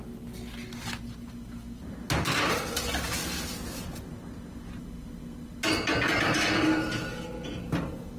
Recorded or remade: recorded